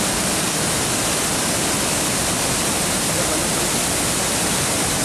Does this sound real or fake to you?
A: real